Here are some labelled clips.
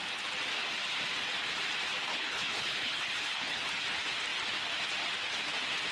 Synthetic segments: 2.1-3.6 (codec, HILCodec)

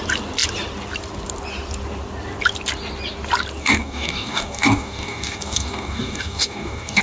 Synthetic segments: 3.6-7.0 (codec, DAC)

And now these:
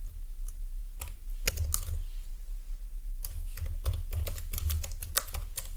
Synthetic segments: none

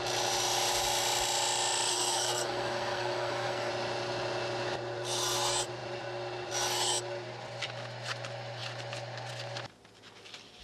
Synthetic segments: 1.9-3.7 (codec, SNAC)

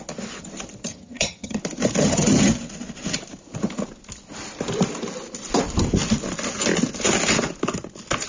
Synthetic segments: 0.9-1.6 (vocoder, HiFi-GAN); 2.0-2.5